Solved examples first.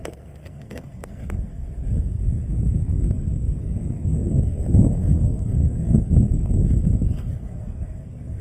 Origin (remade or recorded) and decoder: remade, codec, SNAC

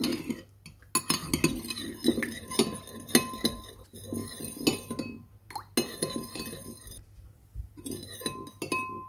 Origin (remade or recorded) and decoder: recorded